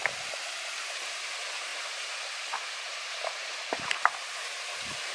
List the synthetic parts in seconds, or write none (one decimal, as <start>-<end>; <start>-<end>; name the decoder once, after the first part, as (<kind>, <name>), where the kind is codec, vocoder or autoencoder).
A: 0.8-5.1 (vocoder, BigVGAN v2)